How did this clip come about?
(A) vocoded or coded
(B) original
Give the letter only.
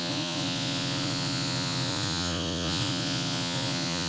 A